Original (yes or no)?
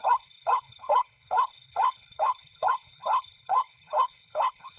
no